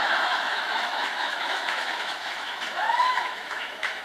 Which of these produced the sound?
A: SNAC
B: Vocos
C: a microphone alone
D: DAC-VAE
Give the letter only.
D